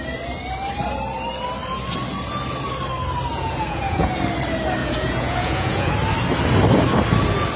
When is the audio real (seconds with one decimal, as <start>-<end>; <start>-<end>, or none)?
0.0-3.3; 4.1-4.8; 5.9-7.6